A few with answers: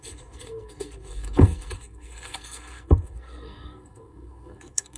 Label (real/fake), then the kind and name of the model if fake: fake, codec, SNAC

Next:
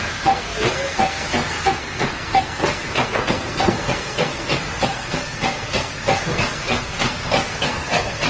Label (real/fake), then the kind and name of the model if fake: fake, codec, SNAC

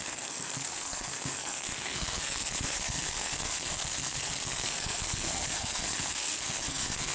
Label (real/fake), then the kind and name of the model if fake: fake, codec, SNAC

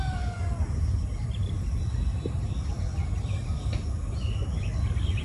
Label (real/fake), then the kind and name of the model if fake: real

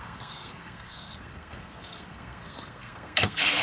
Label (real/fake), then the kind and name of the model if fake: fake, codec, SNAC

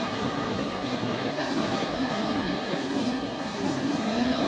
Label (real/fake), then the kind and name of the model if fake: fake, codec, SNAC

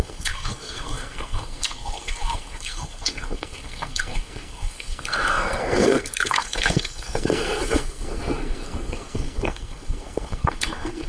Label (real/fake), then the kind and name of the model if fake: fake, codec, SNAC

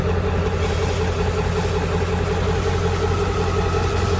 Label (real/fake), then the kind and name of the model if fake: real